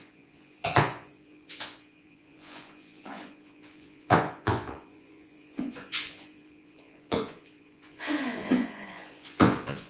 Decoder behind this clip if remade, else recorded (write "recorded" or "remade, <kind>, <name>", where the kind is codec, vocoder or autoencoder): remade, vocoder, Vocos